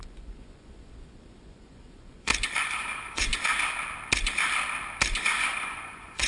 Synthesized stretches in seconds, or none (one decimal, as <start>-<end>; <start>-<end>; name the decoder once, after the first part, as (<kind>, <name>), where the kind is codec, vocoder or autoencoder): 0.0-2.3 (vocoder, Vocos); 2.8-3.3; 5.2-6.3